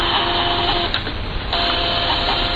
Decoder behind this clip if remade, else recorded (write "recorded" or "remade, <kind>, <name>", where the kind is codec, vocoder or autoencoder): recorded